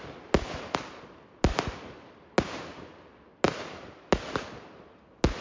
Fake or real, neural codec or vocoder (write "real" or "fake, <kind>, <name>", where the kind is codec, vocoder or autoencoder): real